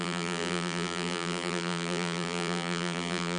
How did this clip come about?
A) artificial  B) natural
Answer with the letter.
A